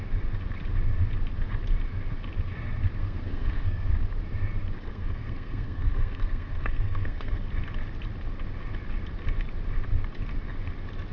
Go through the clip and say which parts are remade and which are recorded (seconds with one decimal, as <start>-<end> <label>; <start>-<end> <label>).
0.0-3.0 recorded; 3.0-3.9 remade; 3.9-4.8 recorded; 4.8-7.4 remade; 7.4-11.1 recorded